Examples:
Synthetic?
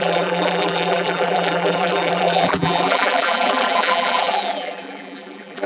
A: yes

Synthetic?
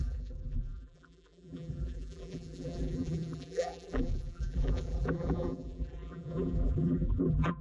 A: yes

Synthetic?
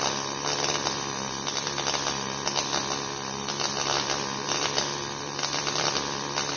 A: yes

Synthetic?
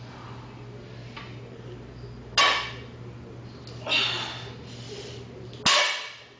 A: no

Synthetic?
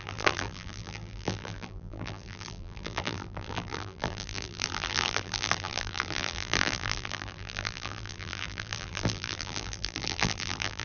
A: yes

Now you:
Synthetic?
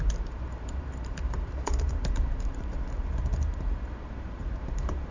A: yes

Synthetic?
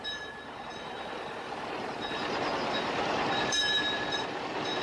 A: yes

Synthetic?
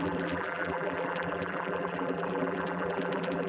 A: yes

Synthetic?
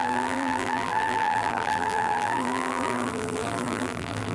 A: yes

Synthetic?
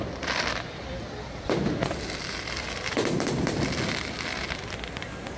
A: yes